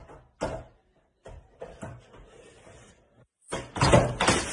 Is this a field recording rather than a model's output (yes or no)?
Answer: yes